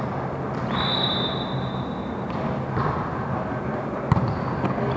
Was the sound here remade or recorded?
recorded